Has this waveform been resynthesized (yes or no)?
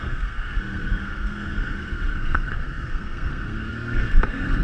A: yes